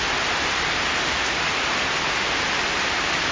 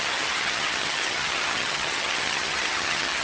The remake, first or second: second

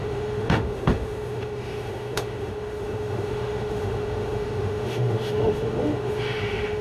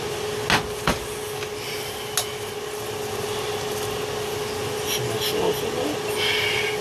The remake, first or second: first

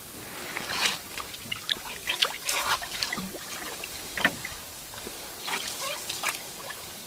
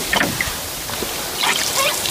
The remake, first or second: first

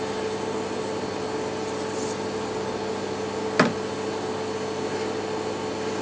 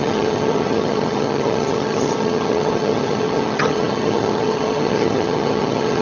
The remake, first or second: second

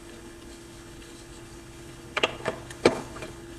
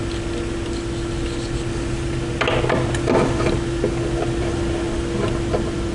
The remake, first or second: first